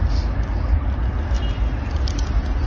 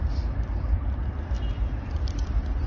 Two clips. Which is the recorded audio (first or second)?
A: first